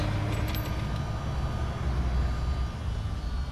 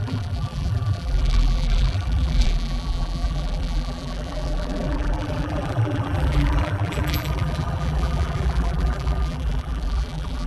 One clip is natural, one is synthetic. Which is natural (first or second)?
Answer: first